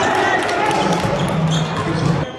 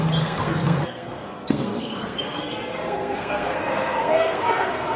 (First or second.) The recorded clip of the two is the first